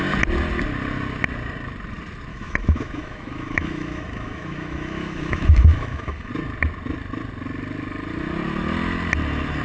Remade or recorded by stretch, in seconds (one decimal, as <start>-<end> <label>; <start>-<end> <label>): 0.0-2.3 recorded; 2.3-6.3 remade; 6.3-9.6 recorded